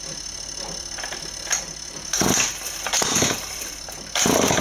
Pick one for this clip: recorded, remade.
remade